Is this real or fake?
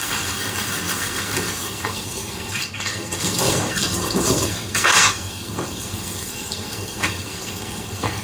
fake